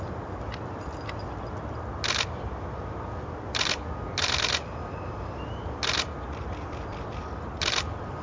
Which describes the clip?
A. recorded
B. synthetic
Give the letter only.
A